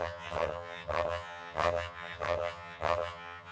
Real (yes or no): no